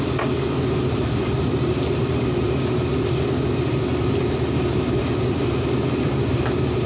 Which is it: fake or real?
fake